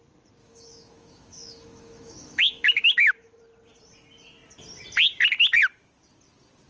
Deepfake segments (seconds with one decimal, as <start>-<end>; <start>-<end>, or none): 0.4-3.4